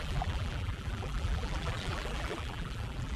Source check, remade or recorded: remade